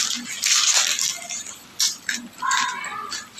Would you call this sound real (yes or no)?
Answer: yes